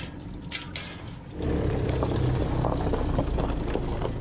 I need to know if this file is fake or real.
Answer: real